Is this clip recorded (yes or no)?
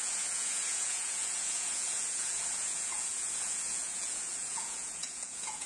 no